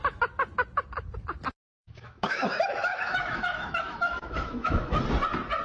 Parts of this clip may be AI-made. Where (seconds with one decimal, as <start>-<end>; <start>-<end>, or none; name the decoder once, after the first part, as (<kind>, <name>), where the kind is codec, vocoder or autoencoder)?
1.6-5.0 (autoencoder, DAC-VAE)